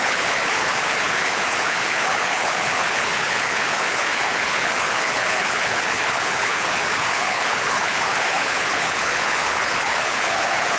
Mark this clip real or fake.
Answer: fake